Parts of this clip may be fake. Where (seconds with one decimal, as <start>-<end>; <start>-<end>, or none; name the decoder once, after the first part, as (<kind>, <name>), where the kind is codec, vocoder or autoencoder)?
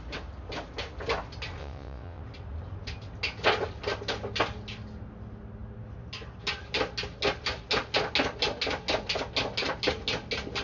1.6-2.2 (vocoder, WaveNeXt)